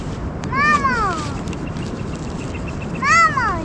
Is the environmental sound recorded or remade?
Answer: recorded